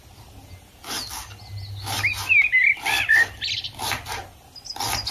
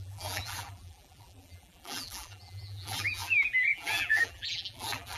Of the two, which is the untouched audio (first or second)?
first